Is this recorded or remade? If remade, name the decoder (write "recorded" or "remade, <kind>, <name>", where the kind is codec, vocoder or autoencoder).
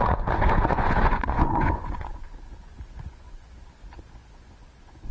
remade, vocoder, Vocos